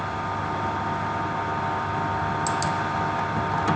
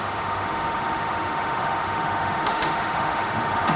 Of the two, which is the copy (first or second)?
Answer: second